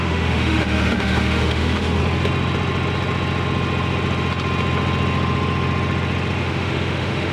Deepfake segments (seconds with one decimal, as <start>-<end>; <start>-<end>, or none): 0.0-2.0; 6.4-7.3